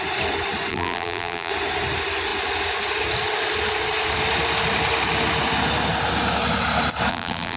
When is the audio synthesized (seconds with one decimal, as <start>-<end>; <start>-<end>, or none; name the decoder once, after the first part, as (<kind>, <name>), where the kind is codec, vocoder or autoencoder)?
0.7-1.5 (vocoder, BigVGAN v2); 7.1-7.6